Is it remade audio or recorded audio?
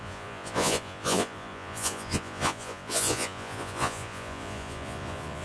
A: remade